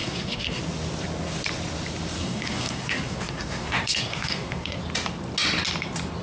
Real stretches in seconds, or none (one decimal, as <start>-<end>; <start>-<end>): 0.6-2.2; 4.8-6.2